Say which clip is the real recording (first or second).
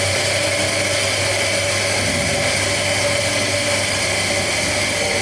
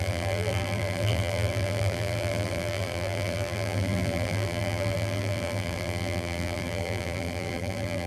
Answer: first